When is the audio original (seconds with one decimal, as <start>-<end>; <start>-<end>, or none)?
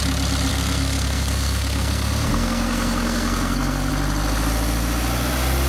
0.0-0.5; 3.9-5.7